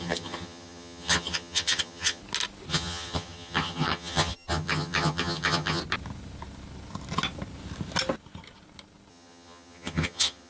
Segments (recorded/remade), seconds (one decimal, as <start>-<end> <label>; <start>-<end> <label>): 0.0-2.2 remade; 2.2-2.7 recorded; 2.7-5.8 remade; 5.8-9.1 recorded; 9.1-10.5 remade